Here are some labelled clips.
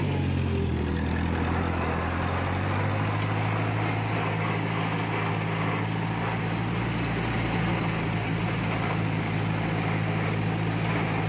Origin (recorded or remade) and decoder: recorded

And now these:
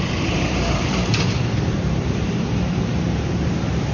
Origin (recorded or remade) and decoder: remade, vocoder, BigVGAN v2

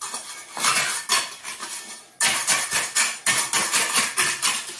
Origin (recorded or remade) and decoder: recorded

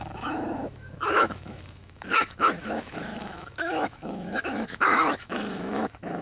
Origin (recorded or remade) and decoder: remade, autoencoder, DAC-VAE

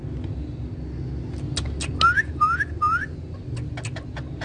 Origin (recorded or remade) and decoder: recorded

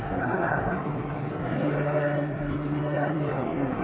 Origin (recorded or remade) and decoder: remade, codec, SNAC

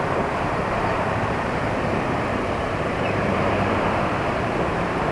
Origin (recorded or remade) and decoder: remade, vocoder, BigVGAN v2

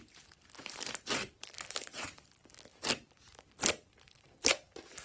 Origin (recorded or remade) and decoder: remade, vocoder, BigVGAN v2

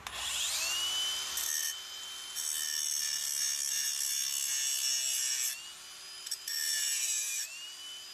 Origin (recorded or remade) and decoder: recorded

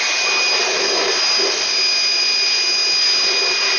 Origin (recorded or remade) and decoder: recorded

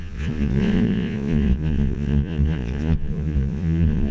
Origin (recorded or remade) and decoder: remade, vocoder, Vocos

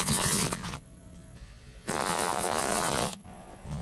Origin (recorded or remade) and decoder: remade, vocoder, Vocos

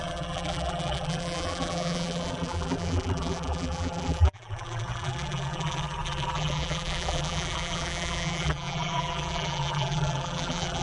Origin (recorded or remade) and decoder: remade, vocoder, BigVGAN v2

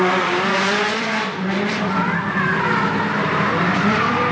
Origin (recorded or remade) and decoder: remade, vocoder, BigVGAN v2